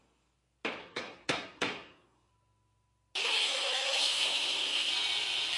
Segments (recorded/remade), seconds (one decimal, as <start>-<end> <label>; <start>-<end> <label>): 0.0-0.8 recorded; 0.8-2.3 remade; 2.3-3.2 recorded; 3.2-4.9 remade; 4.9-5.6 recorded